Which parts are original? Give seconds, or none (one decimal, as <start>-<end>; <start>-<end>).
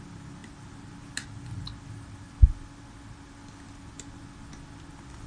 0.0-5.3